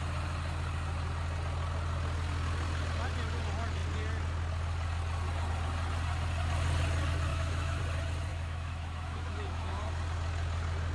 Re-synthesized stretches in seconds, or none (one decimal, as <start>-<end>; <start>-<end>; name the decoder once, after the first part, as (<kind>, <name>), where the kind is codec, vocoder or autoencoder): 7.3-7.8 (autoencoder, DAC-VAE); 8.3-9.8